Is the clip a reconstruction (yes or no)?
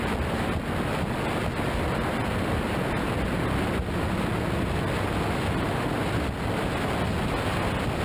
no